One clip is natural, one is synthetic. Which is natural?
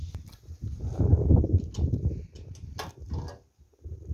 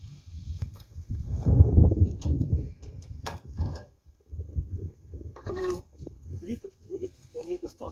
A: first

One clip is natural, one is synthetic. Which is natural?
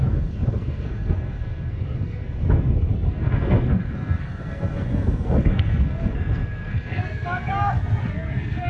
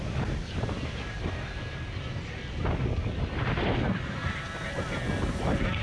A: second